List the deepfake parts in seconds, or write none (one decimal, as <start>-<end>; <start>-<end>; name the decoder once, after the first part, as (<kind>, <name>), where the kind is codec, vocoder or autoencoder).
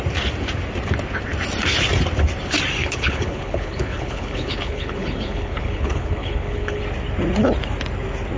2.8-6.8 (codec, HILCodec)